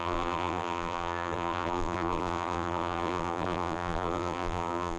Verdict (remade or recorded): remade